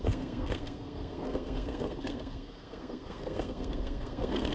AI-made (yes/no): yes